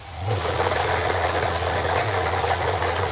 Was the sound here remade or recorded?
remade